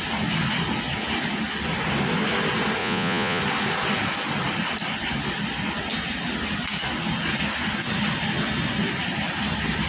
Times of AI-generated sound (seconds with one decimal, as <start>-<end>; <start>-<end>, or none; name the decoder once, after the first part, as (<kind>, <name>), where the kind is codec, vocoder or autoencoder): 2.8-3.4 (vocoder, Vocos)